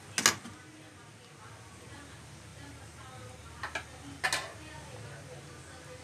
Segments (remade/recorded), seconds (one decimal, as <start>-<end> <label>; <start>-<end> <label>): 0.0-6.0 recorded